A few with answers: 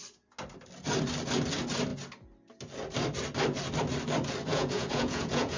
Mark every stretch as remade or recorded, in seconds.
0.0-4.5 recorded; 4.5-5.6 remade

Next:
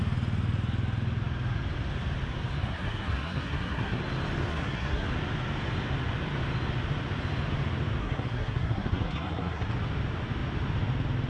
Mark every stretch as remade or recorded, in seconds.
0.0-2.6 recorded; 2.6-4.0 remade; 4.0-4.5 recorded; 4.5-5.1 remade; 5.1-8.0 recorded; 8.0-9.7 remade; 9.7-11.3 recorded